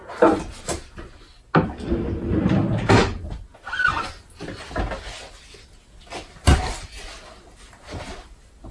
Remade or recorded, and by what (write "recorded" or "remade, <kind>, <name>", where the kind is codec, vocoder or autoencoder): recorded